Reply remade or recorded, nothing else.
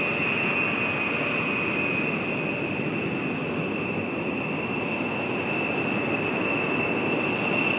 recorded